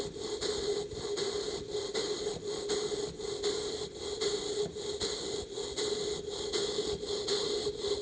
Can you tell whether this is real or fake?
real